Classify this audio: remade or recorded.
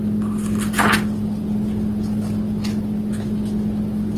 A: recorded